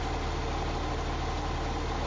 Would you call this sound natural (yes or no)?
yes